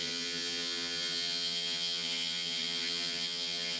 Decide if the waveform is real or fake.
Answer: fake